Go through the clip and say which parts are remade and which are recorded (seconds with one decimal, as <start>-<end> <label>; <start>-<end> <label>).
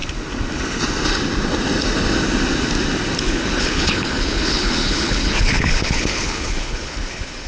0.0-3.2 recorded; 3.2-7.5 remade